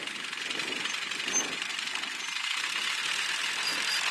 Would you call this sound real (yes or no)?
yes